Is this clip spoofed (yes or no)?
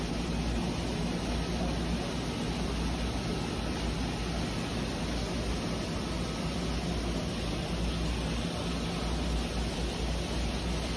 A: no